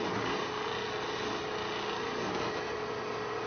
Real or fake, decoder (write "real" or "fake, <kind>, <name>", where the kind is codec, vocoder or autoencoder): real